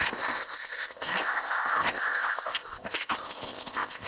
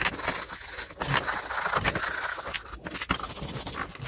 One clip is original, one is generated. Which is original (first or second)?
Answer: second